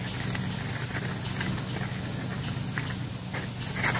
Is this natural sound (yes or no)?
yes